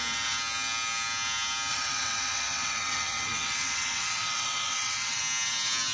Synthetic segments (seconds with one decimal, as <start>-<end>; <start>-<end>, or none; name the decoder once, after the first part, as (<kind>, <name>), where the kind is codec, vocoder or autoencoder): 1.7-5.2 (vocoder, WaveNeXt)